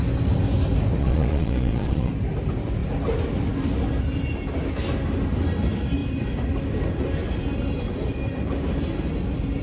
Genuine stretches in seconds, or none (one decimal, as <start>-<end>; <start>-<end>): 0.0-1.0; 2.1-9.6